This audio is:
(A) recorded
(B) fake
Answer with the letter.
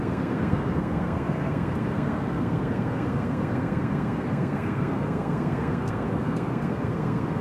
B